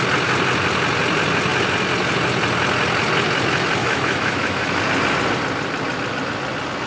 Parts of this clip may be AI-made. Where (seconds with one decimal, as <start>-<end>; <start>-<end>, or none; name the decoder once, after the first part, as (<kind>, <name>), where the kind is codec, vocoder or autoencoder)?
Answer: 3.8-4.8 (autoencoder, DAC-VAE)

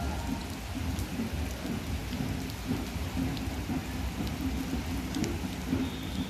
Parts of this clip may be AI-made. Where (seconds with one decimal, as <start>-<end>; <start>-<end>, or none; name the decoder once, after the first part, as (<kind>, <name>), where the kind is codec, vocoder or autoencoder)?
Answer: none